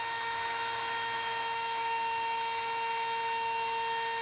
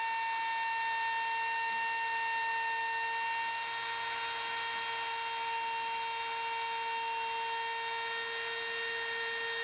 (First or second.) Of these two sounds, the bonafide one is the second